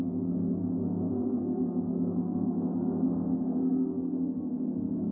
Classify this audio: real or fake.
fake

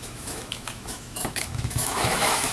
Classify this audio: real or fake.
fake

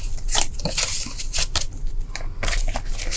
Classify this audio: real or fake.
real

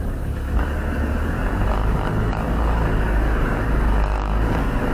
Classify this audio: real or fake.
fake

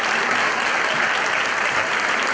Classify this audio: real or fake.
real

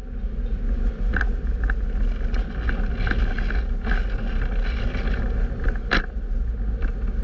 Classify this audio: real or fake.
real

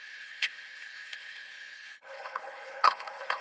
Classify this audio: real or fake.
fake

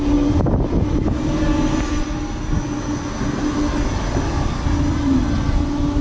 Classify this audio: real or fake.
real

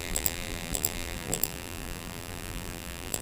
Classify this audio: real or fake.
fake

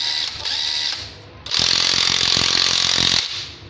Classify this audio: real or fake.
real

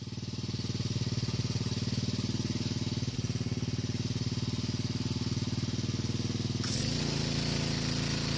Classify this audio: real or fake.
real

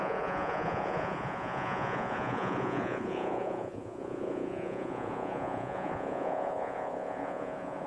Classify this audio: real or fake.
fake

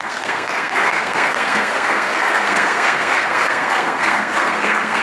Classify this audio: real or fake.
fake